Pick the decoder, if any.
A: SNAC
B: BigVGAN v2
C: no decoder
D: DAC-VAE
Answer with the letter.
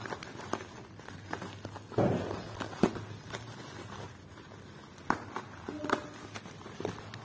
C